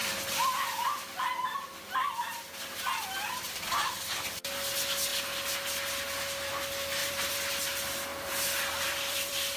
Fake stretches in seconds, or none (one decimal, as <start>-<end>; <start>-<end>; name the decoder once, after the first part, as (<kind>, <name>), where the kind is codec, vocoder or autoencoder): 0.0-2.5 (vocoder, BigVGAN v2); 7.0-7.5; 8.1-9.6